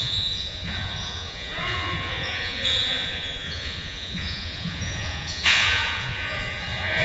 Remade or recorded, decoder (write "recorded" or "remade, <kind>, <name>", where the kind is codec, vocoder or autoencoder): remade, vocoder, Vocos